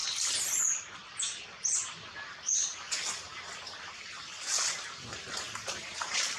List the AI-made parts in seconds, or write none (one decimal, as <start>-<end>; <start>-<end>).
0.0-0.6; 1.0-1.9; 3.3-5.2